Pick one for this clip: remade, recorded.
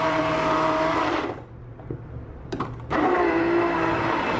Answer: recorded